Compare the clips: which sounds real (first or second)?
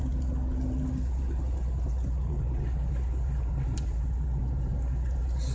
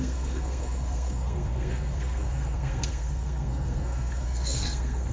first